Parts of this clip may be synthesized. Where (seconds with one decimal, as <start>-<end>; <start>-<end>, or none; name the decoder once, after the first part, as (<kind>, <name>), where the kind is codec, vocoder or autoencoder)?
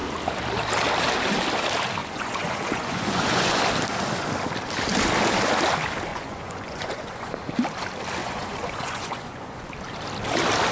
2.0-3.6 (vocoder, Vocos); 6.1-7.4; 8.2-9.7